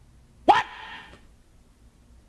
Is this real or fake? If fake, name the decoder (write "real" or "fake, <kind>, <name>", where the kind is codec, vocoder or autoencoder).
real